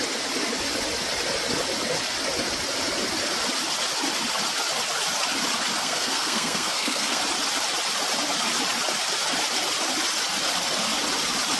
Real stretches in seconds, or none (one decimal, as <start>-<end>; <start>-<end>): 0.0-5.8; 7.2-11.6